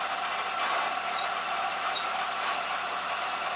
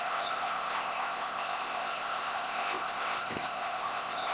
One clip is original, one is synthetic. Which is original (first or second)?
first